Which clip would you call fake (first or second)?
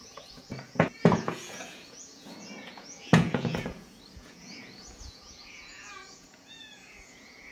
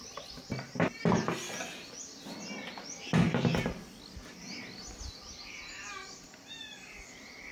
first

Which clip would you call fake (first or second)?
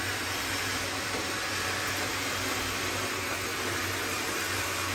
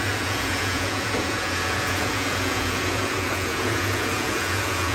second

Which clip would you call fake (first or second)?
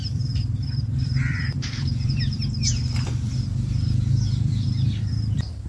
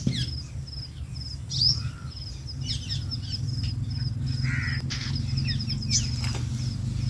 first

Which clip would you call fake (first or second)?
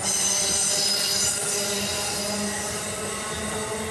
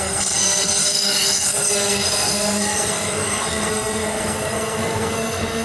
second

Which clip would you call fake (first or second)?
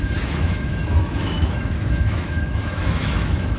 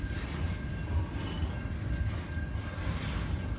first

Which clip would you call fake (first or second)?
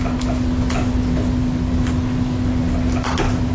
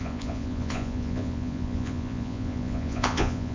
second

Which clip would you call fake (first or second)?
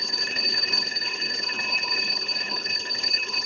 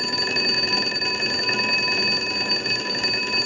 first